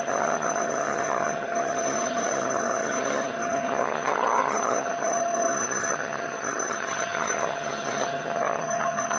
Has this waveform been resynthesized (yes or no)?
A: yes